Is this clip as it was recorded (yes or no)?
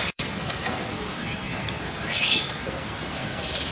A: no